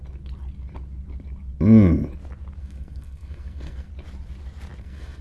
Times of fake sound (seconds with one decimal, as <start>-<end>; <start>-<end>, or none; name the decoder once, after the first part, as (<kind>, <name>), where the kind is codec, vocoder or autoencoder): 2.6-3.9 (codec, SNAC); 4.8-5.2